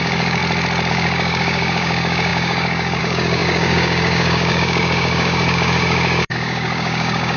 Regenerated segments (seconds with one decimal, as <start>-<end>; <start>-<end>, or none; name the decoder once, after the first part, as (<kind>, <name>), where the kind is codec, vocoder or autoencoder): 0.0-0.4 (codec, DAC); 0.9-7.4